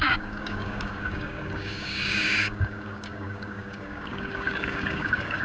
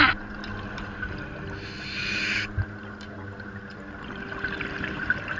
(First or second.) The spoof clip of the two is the first